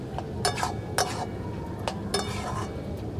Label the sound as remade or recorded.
recorded